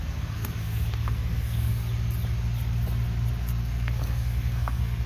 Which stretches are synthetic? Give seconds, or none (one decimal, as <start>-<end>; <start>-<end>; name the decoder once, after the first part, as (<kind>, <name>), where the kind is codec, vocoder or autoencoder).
0.0-1.7 (codec, SNAC); 3.5-5.1